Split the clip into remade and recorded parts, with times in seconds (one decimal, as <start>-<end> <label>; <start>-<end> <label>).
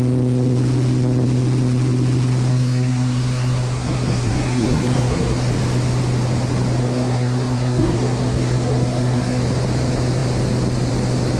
0.0-2.5 recorded; 2.5-5.5 remade; 5.5-6.8 recorded; 6.8-9.4 remade; 9.4-11.4 recorded